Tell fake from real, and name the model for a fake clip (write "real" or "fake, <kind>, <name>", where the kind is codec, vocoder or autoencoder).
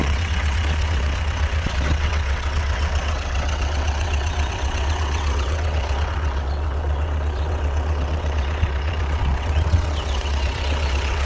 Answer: fake, vocoder, WaveNeXt